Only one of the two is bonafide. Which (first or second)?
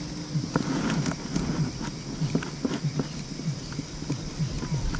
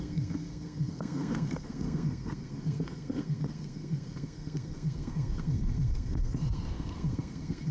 first